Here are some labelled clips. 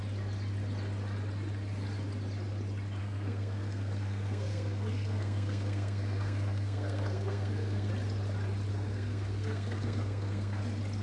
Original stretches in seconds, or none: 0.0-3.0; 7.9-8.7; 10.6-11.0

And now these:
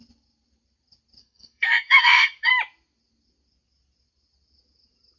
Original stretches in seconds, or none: 0.0-1.2; 2.5-5.2